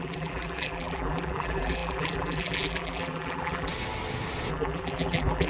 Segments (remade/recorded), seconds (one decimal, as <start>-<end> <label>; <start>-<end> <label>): 0.0-3.7 remade; 3.7-4.5 recorded; 4.5-5.5 remade